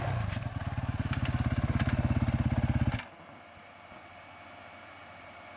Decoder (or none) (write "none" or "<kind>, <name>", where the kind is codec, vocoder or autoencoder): none